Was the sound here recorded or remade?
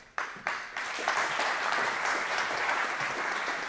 remade